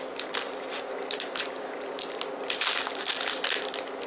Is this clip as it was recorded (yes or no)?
yes